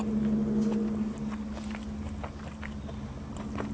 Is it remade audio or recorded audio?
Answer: recorded